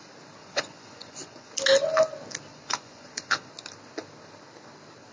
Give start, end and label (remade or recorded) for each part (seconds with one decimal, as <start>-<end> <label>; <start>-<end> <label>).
0.0-0.4 recorded; 0.4-1.5 remade; 1.5-2.5 recorded; 2.5-3.5 remade; 3.5-5.1 recorded